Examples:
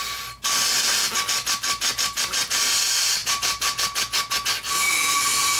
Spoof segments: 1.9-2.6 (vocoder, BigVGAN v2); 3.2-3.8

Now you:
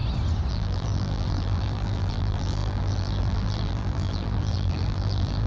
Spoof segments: 0.5-5.5 (vocoder, BigVGAN v2)

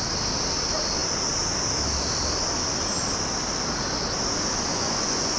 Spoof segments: 4.7-5.4 (vocoder, Vocos)